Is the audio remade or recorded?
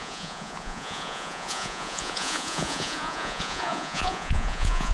remade